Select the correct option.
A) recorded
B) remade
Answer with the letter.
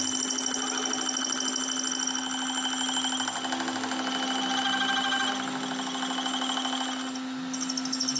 A